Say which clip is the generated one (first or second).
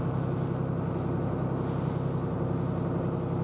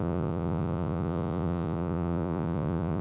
second